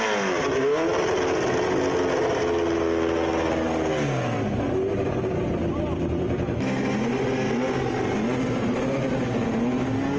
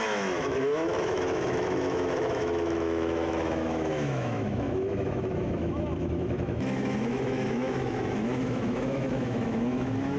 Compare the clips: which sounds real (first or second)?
first